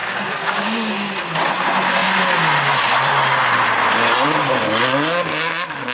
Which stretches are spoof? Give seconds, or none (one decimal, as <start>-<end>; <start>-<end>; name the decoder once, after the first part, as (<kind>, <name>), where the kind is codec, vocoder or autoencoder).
0.0-0.9 (codec, DAC)